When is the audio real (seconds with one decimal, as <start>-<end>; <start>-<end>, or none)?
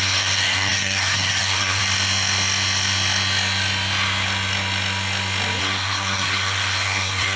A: 1.8-5.6